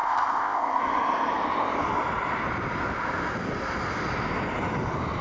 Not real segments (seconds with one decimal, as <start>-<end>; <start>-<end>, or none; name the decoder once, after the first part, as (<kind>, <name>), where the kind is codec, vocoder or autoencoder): 0.0-0.8 (codec, ZipCodec)